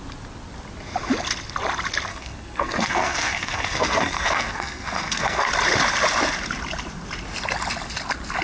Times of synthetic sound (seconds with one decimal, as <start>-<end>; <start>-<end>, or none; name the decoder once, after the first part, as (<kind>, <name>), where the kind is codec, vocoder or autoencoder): 2.1-5.5 (codec, SNAC)